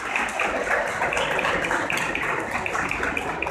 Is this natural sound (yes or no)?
yes